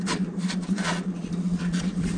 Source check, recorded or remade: remade